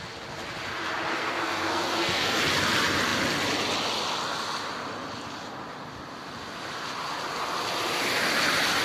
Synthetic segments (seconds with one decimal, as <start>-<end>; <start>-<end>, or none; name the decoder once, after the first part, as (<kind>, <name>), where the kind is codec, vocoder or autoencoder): 1.1-2.4 (codec, SNAC)